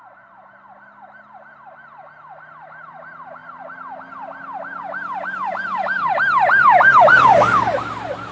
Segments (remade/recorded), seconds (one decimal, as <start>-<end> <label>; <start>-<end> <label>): 0.0-8.3 recorded